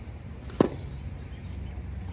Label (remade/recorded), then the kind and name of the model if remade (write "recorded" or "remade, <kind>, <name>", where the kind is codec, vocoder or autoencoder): recorded